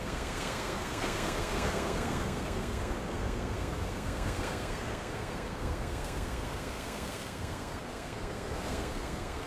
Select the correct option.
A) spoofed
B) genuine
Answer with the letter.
A